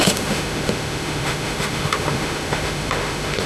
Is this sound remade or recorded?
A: remade